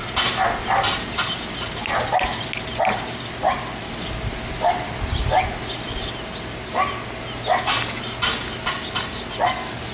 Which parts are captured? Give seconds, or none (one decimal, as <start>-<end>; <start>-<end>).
0.0-9.9